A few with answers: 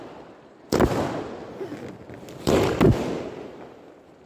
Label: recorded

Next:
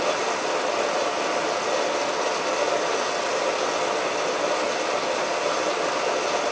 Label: recorded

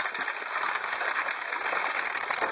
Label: recorded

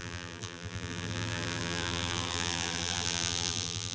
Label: remade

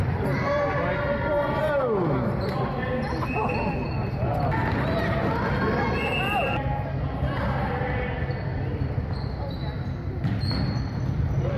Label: recorded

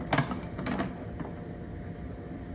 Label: recorded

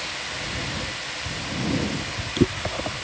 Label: recorded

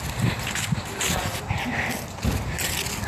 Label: remade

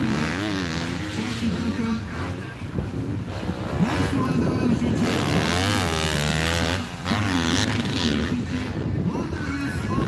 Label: recorded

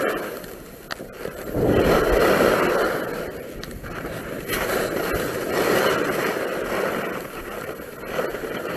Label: recorded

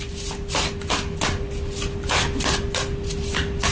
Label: recorded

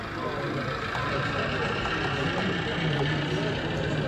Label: recorded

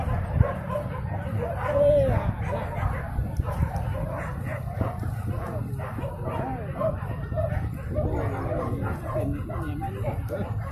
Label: recorded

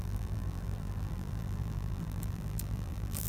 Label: remade